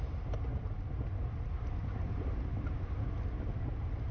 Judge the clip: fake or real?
real